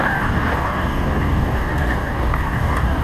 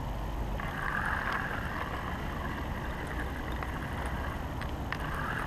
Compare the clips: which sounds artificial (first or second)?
first